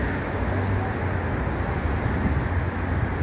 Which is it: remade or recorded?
recorded